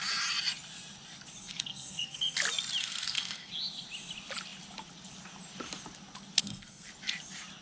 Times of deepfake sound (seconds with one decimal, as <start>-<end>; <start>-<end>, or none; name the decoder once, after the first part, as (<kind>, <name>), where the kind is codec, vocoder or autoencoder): 1.4-2.4 (codec, SNAC); 2.8-3.5; 6.4-6.9